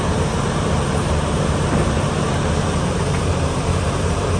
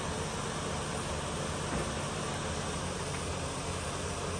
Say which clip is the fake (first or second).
first